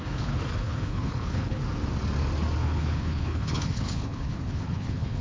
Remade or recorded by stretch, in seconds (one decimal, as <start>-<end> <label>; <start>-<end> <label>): 0.0-1.6 remade; 1.6-2.6 recorded; 2.6-5.2 remade